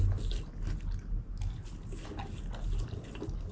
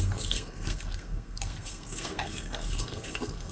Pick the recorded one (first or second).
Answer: first